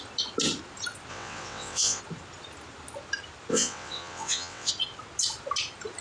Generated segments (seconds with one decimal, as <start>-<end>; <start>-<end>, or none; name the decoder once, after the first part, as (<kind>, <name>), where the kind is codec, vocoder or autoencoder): 1.1-2.0 (vocoder, WaveNeXt); 3.5-4.7